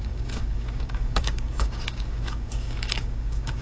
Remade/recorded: remade